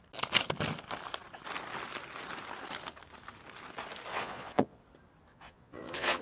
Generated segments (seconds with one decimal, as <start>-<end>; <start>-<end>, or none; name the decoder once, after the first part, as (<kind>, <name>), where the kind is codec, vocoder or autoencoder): 4.1-4.8 (vocoder, Vocos); 5.3-6.2